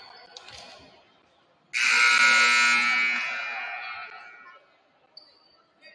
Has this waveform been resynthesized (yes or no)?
no